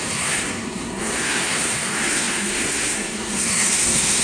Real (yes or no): no